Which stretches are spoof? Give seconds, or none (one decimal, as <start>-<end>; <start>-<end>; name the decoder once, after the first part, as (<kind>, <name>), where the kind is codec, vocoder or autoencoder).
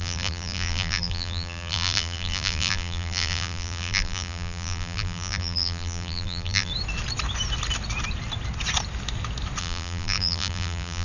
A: 0.0-6.7 (vocoder, BigVGAN v2); 9.6-11.0